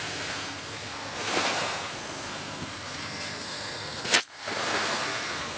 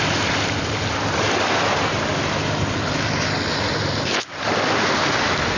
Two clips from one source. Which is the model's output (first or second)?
first